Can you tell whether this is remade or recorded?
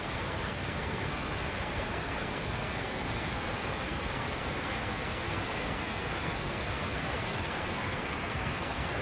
remade